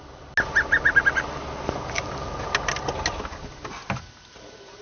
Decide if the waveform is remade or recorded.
recorded